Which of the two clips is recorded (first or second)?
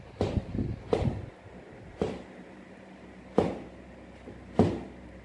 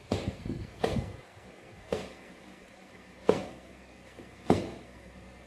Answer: first